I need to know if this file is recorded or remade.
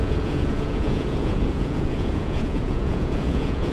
remade